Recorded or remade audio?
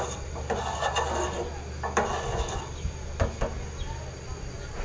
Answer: recorded